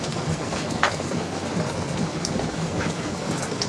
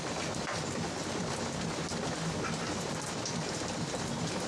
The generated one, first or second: first